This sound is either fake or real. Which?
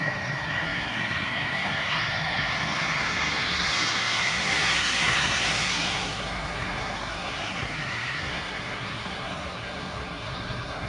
fake